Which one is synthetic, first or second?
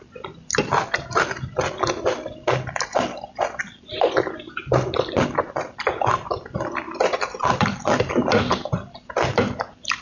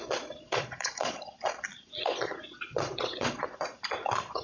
second